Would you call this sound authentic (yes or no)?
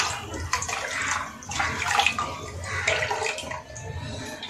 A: yes